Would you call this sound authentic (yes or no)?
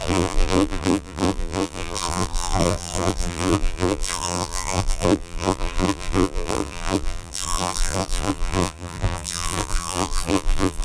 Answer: no